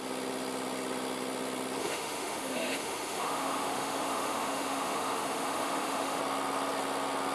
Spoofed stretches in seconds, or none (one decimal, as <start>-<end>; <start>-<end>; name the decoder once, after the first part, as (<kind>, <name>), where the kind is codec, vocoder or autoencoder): 1.8-6.2 (autoencoder, DAC-VAE)